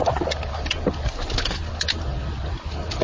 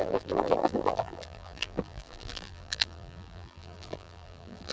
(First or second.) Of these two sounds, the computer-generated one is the second